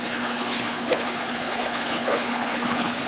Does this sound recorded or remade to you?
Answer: remade